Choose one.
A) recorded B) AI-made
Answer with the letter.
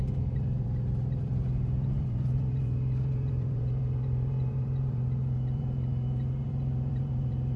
B